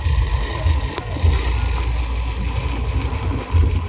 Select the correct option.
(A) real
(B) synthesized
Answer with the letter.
A